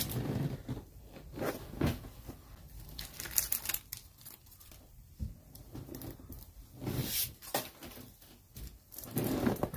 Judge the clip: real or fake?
fake